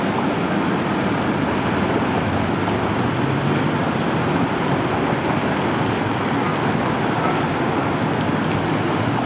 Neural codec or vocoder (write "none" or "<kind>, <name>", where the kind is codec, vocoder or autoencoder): none